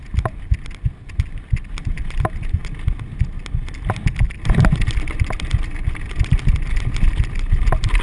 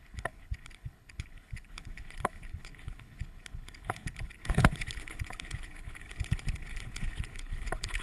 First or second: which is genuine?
first